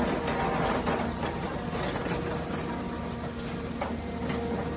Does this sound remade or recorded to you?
recorded